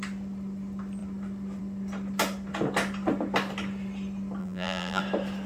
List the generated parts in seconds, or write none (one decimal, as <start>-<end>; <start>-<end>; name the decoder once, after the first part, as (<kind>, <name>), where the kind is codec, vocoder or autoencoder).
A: 4.4-5.0 (vocoder, BigVGAN v2)